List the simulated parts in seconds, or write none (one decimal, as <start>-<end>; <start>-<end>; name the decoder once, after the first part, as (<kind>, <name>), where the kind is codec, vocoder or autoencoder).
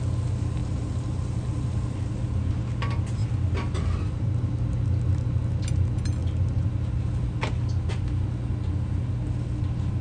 0.6-2.1 (vocoder, BigVGAN v2); 3.2-3.8